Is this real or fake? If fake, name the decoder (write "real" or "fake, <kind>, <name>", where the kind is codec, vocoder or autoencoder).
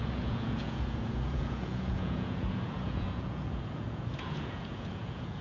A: fake, vocoder, Vocos